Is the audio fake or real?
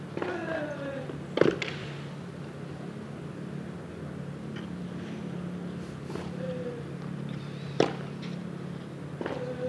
real